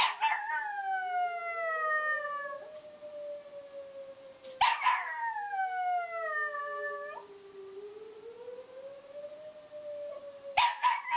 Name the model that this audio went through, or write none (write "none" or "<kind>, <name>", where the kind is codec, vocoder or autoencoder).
none